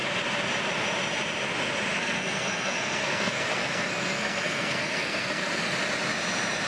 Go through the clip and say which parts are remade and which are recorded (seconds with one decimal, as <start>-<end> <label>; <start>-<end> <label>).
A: 0.0-2.0 recorded; 2.0-5.6 remade; 5.6-6.7 recorded